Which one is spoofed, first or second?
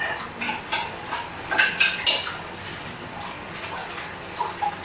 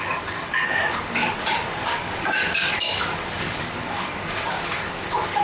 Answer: second